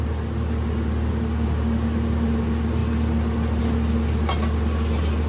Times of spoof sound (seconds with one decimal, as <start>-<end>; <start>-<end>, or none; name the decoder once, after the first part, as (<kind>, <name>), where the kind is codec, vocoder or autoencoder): none